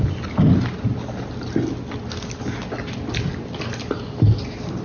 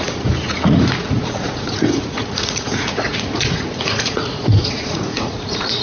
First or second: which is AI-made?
second